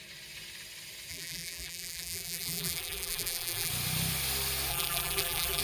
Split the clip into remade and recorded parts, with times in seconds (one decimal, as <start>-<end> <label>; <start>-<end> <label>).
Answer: 0.0-1.1 recorded; 1.1-3.7 remade; 3.7-4.7 recorded; 4.7-5.6 remade